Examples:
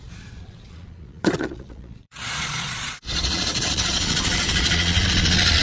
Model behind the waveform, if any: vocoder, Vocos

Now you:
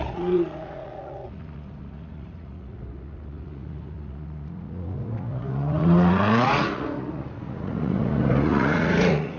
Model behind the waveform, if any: vocoder, Vocos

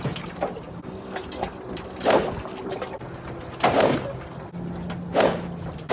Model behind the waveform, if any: none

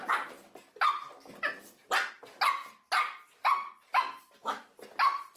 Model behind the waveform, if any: none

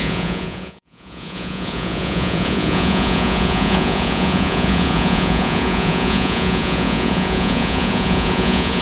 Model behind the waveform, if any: vocoder, Vocos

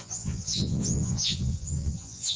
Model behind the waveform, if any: vocoder, Vocos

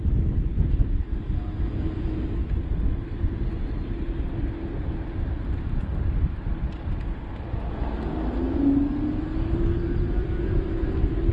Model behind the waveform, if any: none